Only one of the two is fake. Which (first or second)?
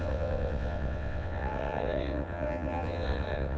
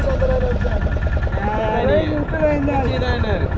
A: first